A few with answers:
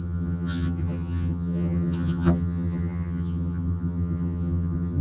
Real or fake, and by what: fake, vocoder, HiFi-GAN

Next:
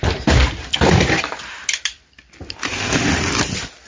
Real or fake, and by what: real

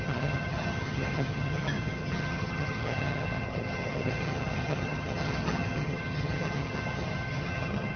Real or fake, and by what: fake, vocoder, HiFi-GAN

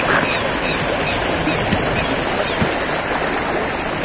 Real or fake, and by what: real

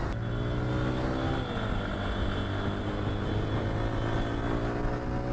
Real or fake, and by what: real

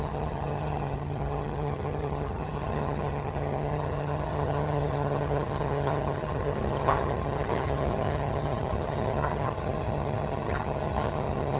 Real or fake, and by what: fake, vocoder, HiFi-GAN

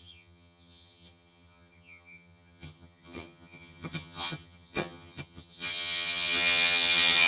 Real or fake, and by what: fake, vocoder, HiFi-GAN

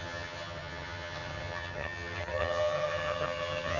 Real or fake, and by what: fake, vocoder, HiFi-GAN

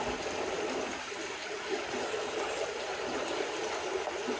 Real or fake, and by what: real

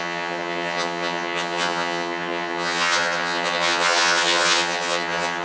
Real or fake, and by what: fake, vocoder, HiFi-GAN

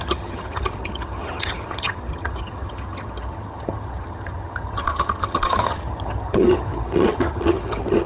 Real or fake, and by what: fake, vocoder, HiFi-GAN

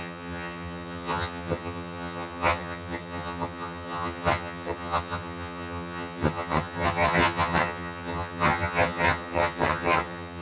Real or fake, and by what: fake, vocoder, HiFi-GAN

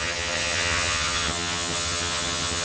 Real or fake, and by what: fake, vocoder, HiFi-GAN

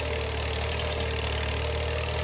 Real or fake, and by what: real